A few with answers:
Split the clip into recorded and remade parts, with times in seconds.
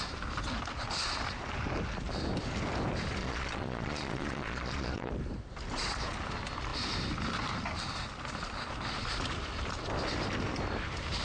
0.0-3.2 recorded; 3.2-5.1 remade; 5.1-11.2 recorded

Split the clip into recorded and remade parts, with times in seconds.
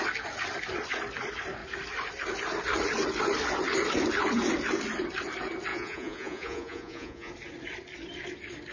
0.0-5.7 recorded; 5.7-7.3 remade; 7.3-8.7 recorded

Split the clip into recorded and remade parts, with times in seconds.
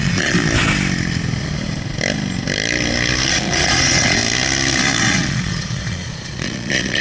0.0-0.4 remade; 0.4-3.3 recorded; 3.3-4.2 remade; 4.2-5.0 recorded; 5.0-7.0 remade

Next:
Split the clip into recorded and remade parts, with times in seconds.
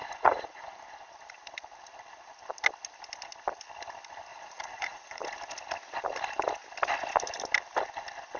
0.0-0.8 remade; 0.8-4.3 recorded; 4.3-5.2 remade; 5.2-8.4 recorded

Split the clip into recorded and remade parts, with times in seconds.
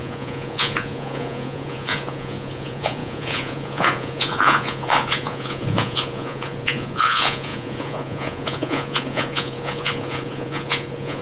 0.0-11.2 remade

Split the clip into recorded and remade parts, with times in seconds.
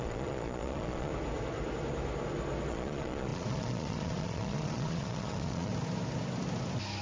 0.0-1.1 remade; 1.1-2.7 recorded; 2.7-5.7 remade; 5.7-7.0 recorded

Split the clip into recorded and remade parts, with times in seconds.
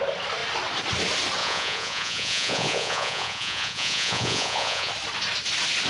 0.0-1.4 recorded; 1.4-4.9 remade; 4.9-5.9 recorded